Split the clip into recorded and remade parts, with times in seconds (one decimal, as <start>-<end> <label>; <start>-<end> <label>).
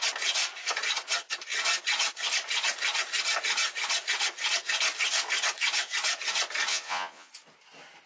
0.0-6.7 recorded; 6.7-7.3 remade; 7.3-8.1 recorded